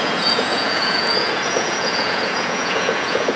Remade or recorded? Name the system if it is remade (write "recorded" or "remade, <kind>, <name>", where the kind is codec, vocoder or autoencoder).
remade, vocoder, Vocos